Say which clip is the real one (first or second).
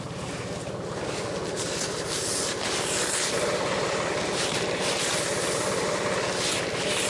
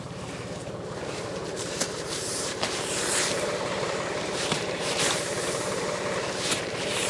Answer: first